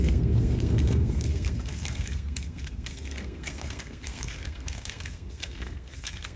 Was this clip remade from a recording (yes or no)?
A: yes